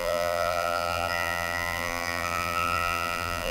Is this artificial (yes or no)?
yes